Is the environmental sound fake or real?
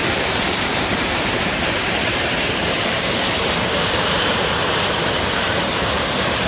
fake